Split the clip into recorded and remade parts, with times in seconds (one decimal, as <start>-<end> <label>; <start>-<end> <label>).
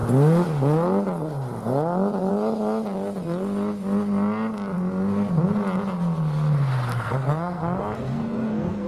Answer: 0.0-6.9 recorded; 6.9-8.9 remade